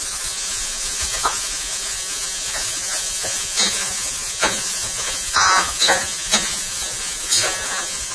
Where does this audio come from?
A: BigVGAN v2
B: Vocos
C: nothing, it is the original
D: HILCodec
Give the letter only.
B